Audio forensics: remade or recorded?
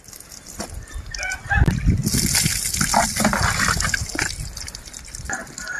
recorded